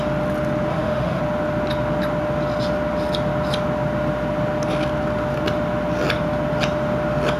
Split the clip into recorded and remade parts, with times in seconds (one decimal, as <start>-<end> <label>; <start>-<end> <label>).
0.0-0.7 recorded; 0.7-1.2 remade; 1.2-7.4 recorded